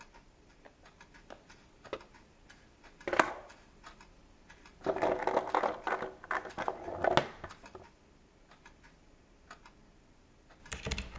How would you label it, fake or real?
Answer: real